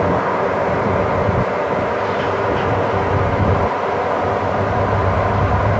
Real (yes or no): yes